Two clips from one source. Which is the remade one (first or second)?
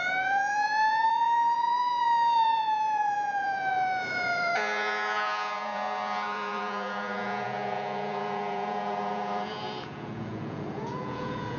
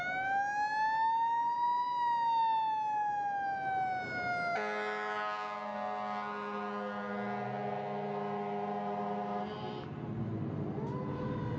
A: first